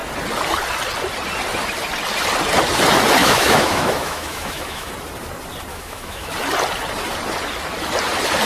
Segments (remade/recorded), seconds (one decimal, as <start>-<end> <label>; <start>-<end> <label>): 0.0-3.2 recorded; 3.2-4.9 remade; 4.9-5.7 recorded; 5.7-6.3 remade; 6.3-8.5 recorded